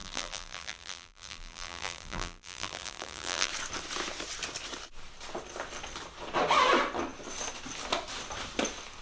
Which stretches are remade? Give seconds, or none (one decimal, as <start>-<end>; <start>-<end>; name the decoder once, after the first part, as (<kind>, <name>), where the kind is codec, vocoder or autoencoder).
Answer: 0.0-3.5 (vocoder, BigVGAN v2)